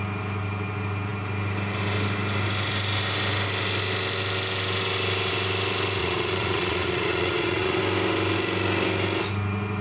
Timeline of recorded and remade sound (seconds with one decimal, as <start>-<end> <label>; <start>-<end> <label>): 0.0-6.0 recorded; 6.0-7.8 remade; 7.8-9.8 recorded